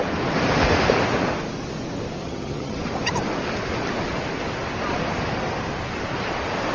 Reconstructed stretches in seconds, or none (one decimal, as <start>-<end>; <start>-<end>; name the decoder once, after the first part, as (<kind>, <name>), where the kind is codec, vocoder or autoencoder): 2.2-2.8 (vocoder, HiFi-GAN)